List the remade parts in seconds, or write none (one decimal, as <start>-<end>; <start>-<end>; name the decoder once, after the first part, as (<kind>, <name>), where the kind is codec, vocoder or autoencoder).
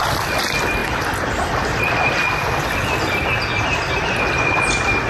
none